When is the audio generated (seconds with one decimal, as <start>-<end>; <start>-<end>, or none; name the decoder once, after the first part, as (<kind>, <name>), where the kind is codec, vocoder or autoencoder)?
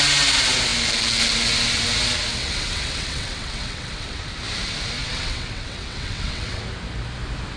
2.3-4.2 (vocoder, WaveNeXt); 5.0-6.6